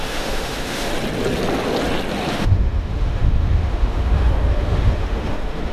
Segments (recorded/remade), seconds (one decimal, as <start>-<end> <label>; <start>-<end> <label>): 0.0-0.9 remade; 0.9-2.3 recorded; 2.3-5.7 remade